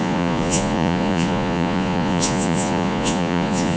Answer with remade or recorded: remade